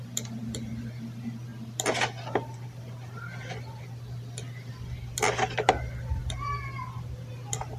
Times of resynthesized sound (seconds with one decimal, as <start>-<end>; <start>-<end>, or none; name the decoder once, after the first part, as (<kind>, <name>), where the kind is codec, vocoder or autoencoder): 1.5-4.7 (vocoder, BigVGAN v2); 6.2-7.3